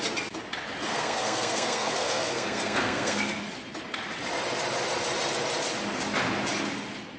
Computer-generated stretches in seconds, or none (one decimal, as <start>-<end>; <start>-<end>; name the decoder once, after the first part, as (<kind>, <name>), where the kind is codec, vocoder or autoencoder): 0.9-3.4 (codec, SNAC)

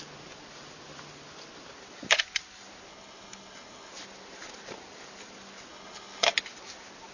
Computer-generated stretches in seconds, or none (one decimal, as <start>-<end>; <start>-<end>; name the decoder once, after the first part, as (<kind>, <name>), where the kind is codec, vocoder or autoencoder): 2.9-3.9 (codec, HILCodec); 5.7-6.3

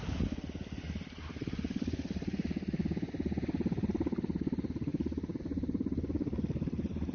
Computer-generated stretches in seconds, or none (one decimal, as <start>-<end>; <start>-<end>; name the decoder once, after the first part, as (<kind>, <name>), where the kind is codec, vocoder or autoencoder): none

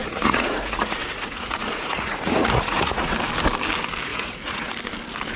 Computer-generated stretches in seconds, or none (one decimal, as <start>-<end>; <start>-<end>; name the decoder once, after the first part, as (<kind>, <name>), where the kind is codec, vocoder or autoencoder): 0.0-3.1 (vocoder, Vocos); 4.1-4.7

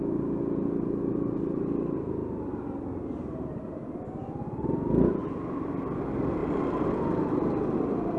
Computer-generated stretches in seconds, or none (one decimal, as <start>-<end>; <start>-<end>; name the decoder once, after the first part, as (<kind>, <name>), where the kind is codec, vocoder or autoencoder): 5.2-5.8 (vocoder, BigVGAN v2); 6.4-8.2

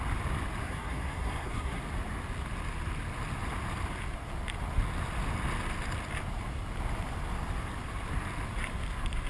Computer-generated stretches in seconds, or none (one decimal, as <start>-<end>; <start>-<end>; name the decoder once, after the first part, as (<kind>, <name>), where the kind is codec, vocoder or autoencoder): 0.6-1.8 (codec, SNAC)

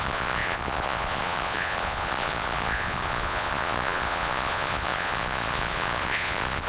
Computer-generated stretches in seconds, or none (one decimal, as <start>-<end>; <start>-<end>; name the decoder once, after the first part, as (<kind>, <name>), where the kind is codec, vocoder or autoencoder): 0.0-6.7 (vocoder, Vocos)